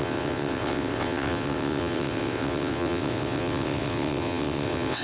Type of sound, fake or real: fake